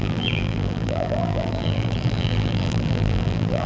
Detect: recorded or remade remade